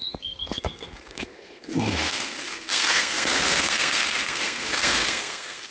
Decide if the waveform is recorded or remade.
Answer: remade